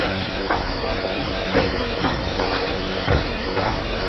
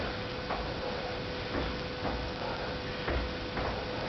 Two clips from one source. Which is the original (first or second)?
second